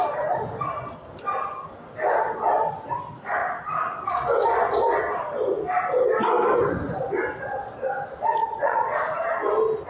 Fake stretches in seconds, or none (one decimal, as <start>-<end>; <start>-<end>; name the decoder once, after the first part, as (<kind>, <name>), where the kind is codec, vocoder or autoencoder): 8.4-9.4 (vocoder, Vocos)